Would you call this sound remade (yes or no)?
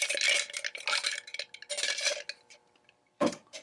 no